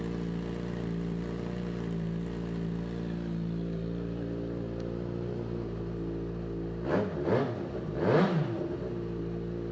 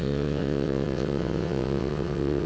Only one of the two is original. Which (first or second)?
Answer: first